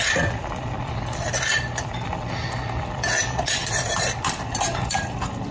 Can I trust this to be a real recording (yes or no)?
no